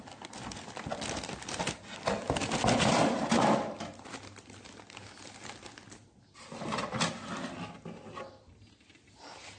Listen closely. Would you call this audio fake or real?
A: real